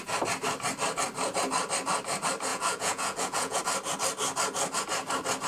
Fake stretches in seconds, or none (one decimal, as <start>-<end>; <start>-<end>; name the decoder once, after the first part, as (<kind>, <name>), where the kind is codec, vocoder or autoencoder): 2.5-3.6 (vocoder, Vocos)